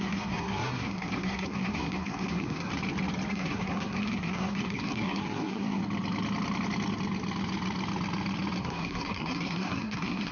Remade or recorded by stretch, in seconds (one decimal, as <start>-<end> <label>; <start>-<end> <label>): 0.0-2.7 remade; 2.7-3.3 recorded; 3.3-5.8 remade; 5.8-8.6 recorded; 8.6-10.3 remade